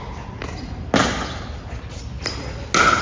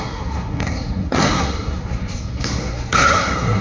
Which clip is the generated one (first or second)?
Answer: second